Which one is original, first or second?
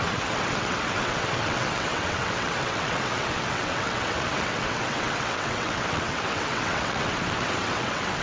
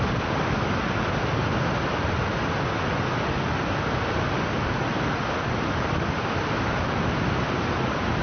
second